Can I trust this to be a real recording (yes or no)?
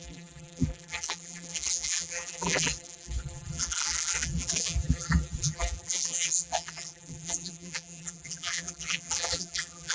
no